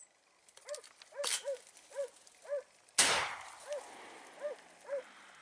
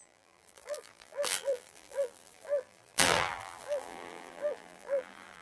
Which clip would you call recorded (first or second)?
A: first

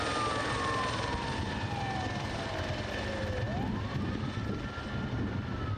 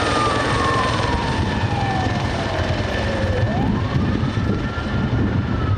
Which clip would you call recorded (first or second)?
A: first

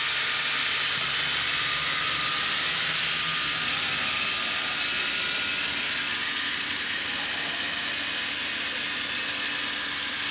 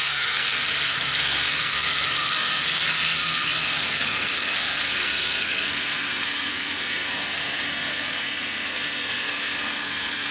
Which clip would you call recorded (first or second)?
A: first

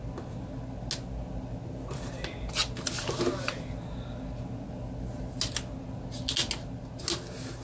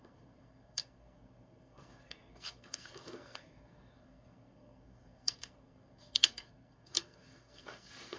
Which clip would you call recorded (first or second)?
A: first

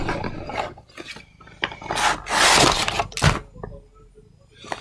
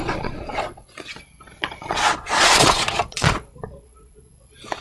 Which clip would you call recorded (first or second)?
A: first